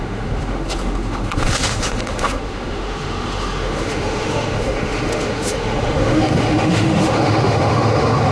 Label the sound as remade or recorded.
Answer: remade